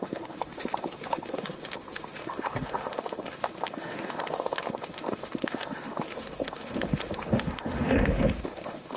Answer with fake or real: fake